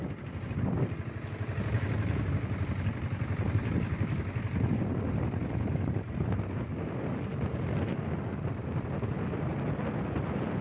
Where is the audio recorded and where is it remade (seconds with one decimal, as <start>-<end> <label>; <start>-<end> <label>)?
0.0-10.6 recorded